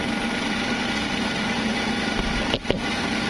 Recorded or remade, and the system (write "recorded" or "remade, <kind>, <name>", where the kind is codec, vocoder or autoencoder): remade, vocoder, BigVGAN v2